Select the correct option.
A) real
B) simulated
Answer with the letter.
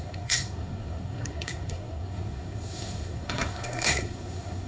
B